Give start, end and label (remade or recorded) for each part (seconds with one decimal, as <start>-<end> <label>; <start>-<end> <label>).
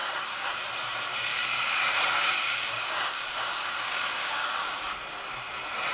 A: 0.0-0.5 remade; 0.5-1.3 recorded; 1.3-4.8 remade; 4.8-5.9 recorded